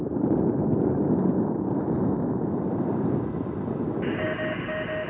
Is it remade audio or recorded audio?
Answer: recorded